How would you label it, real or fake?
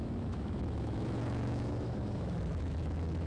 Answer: fake